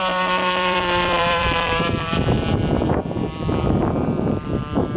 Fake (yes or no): yes